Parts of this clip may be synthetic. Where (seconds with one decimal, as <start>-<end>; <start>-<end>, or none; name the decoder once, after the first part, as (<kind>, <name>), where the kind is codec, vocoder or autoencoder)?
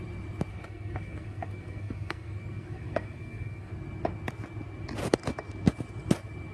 0.5-3.7 (codec, SNAC)